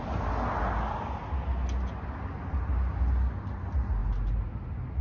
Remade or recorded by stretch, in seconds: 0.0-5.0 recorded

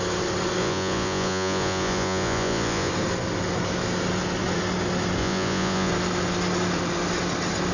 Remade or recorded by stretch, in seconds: 0.0-0.6 recorded; 0.6-2.9 remade; 2.9-5.2 recorded; 5.2-5.9 remade; 5.9-7.7 recorded

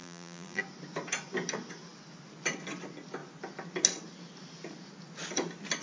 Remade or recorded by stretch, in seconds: 0.0-0.6 remade; 0.6-5.8 recorded

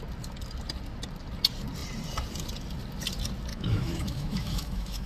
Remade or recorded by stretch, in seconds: 0.0-3.5 recorded; 3.5-5.1 remade

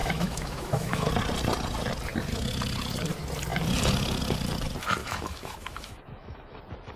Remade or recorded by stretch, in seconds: 0.0-1.1 remade; 1.1-5.0 recorded; 5.0-6.6 remade; 6.6-7.0 recorded